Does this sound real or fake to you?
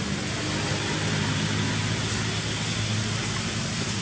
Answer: real